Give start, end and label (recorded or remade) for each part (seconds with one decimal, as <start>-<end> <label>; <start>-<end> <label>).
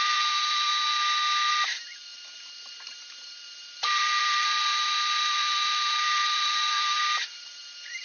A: 0.0-0.7 remade; 0.7-1.5 recorded; 1.5-8.0 remade